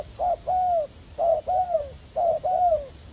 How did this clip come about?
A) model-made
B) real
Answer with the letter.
B